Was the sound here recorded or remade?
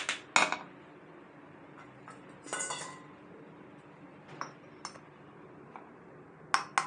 recorded